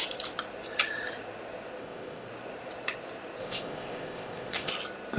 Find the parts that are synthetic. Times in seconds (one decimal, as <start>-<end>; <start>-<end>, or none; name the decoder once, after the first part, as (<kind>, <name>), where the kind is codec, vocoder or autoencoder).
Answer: 1.8-2.3 (codec, ZipCodec); 3.4-4.7